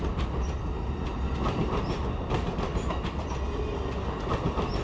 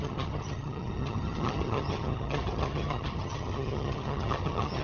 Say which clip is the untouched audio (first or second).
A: first